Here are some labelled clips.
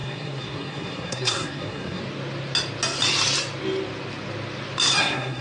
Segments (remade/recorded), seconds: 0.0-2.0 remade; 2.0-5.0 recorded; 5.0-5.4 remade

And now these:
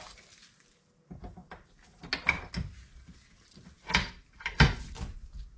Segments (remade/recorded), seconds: 0.0-5.6 recorded

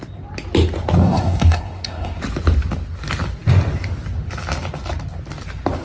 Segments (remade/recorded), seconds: 0.0-1.0 recorded; 1.0-2.2 remade; 2.2-5.8 recorded

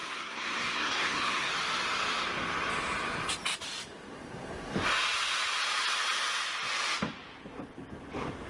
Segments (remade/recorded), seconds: 0.0-1.5 remade; 1.5-8.5 recorded

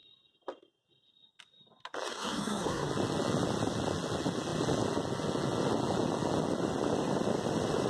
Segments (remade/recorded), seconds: 0.0-2.1 recorded; 2.1-2.9 remade; 2.9-7.9 recorded